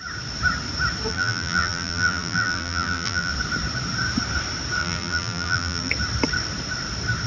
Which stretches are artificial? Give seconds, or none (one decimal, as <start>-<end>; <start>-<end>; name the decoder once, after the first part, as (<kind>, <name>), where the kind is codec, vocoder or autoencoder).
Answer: 1.1-3.3 (vocoder, BigVGAN v2); 4.8-5.9

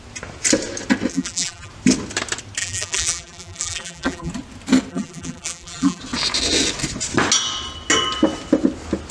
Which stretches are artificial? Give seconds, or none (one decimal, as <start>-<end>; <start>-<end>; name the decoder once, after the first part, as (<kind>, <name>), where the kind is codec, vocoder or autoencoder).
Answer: 1.1-1.7 (vocoder, BigVGAN v2); 2.6-4.3; 4.9-6.0

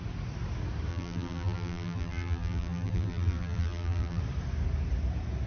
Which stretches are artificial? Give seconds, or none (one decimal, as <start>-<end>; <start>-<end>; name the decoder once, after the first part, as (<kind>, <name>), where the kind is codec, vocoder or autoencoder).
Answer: 0.9-4.2 (vocoder, BigVGAN v2)

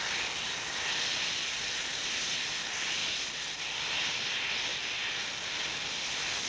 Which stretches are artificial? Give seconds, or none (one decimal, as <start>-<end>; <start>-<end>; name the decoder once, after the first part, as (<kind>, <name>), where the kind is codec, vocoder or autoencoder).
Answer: 3.0-4.3 (vocoder, BigVGAN v2)